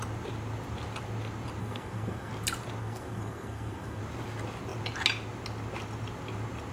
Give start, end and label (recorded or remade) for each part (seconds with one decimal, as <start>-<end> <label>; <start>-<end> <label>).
0.0-1.6 recorded; 1.6-2.3 remade; 2.3-2.8 recorded; 2.8-4.0 remade; 4.0-6.7 recorded